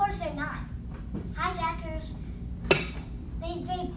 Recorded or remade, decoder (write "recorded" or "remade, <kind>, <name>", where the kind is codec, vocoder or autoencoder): recorded